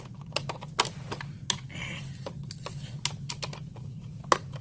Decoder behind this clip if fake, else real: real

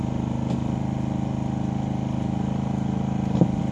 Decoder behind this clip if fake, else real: real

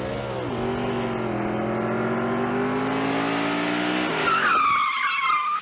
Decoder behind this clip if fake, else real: real